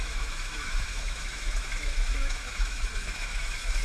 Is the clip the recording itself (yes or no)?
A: no